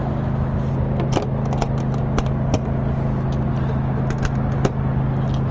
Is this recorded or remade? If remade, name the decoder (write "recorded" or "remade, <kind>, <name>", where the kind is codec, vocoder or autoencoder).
recorded